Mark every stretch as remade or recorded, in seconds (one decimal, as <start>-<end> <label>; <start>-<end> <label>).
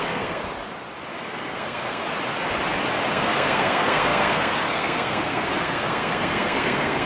0.0-0.4 remade; 0.4-1.1 recorded; 1.1-2.0 remade; 2.0-3.1 recorded; 3.1-7.1 remade